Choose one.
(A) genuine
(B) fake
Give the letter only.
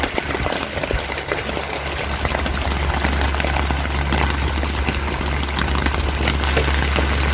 A